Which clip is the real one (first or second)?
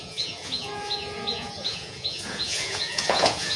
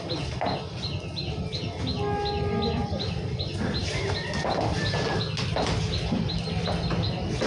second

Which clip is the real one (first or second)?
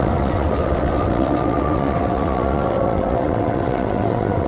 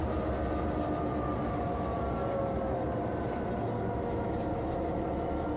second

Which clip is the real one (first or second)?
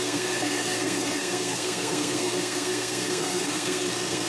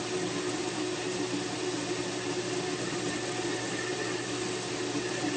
second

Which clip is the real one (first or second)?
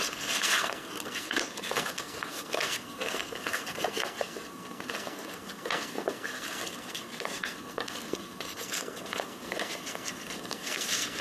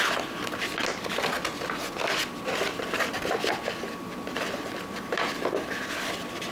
second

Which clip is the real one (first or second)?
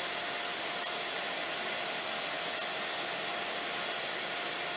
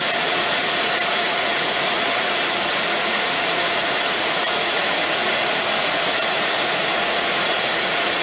first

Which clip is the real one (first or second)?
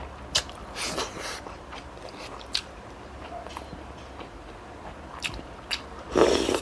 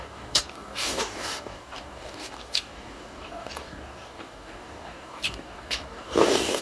first